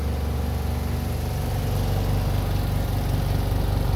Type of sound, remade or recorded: recorded